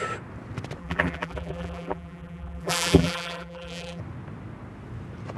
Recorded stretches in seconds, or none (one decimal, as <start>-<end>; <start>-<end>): 0.0-0.8; 4.0-5.4